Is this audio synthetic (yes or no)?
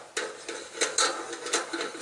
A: no